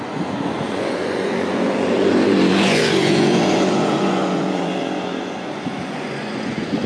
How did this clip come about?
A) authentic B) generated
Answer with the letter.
B